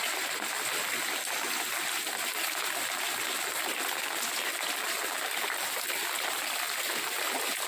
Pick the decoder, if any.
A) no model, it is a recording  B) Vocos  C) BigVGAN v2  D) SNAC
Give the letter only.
A